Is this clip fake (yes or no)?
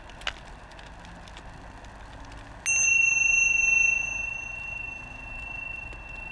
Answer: no